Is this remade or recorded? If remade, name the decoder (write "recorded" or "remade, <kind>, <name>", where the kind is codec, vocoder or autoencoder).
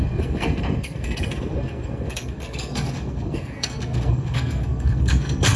remade, codec, SNAC